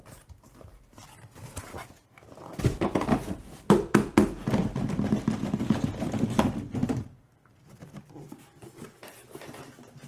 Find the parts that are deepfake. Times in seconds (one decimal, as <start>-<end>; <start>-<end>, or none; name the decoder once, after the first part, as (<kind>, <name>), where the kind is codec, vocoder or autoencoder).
3.1-3.7 (vocoder, BigVGAN v2); 6.8-8.0